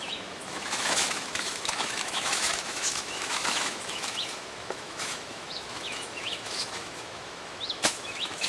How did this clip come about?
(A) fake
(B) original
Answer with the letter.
A